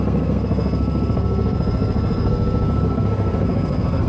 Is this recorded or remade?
remade